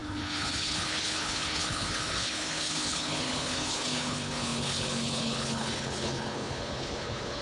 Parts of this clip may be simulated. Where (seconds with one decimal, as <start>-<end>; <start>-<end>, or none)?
0.0-7.4